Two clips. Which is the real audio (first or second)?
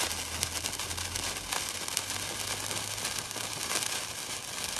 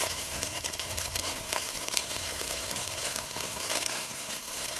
first